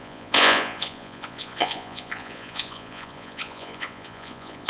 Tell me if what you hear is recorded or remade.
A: remade